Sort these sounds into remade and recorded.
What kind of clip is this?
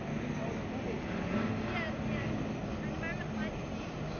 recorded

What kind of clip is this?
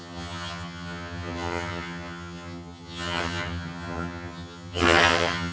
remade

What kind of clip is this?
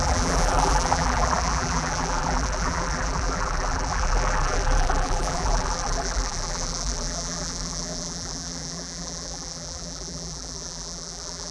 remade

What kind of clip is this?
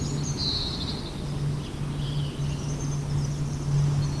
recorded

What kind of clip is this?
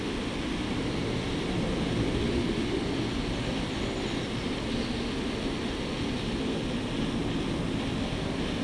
recorded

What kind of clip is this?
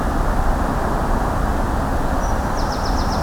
remade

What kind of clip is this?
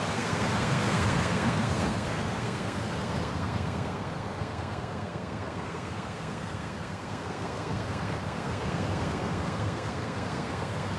remade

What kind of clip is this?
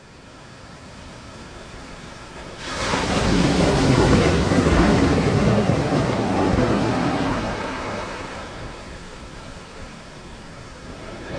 remade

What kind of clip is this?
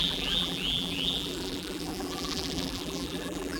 remade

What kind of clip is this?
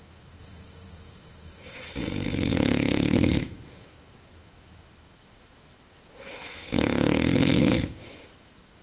remade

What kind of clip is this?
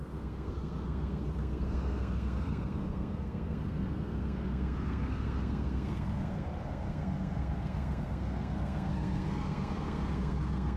remade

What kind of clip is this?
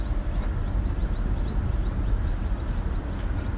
recorded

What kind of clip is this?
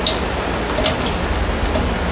recorded